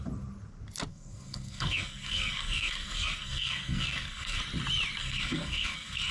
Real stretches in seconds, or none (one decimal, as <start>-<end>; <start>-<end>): 0.0-0.9; 4.4-5.0